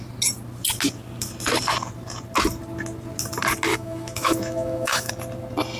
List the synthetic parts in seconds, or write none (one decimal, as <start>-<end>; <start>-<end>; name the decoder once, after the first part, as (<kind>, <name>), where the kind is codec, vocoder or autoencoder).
3.7-5.1 (autoencoder, DAC-VAE)